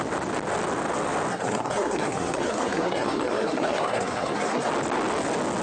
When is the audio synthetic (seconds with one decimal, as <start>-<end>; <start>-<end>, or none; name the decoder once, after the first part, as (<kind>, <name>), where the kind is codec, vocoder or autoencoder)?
1.3-4.7 (codec, SNAC)